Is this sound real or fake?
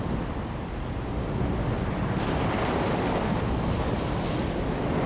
real